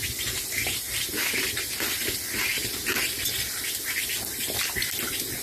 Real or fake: real